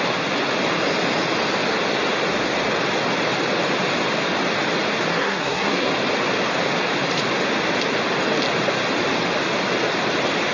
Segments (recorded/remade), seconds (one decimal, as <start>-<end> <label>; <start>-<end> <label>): 0.0-5.1 recorded; 5.1-5.9 remade; 5.9-10.5 recorded